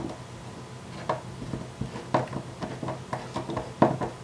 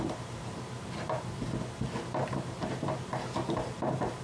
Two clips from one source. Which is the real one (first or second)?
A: first